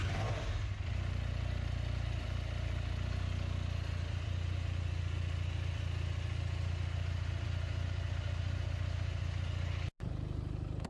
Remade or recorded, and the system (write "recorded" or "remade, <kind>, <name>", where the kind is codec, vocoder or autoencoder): recorded